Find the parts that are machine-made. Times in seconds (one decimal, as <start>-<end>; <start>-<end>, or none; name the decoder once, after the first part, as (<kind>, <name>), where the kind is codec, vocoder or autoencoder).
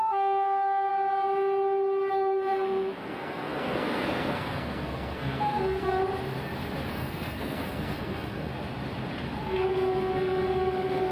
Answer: 0.0-0.9 (codec, SNAC); 2.1-6.0; 6.9-8.5; 9.4-11.1